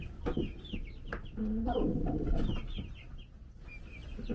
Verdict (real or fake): real